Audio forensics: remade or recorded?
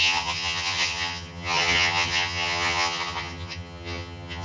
remade